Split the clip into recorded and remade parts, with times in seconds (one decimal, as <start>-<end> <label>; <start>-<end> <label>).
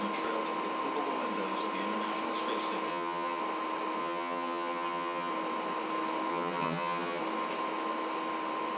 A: 0.0-2.9 recorded; 2.9-3.4 remade; 3.4-4.0 recorded; 4.0-5.3 remade; 5.3-6.3 recorded; 6.3-7.2 remade; 7.2-8.8 recorded